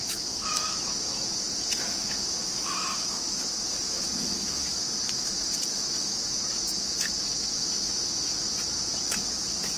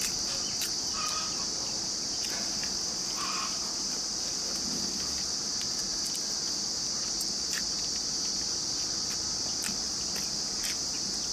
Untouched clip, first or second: second